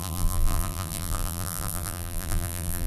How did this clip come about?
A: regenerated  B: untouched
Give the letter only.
A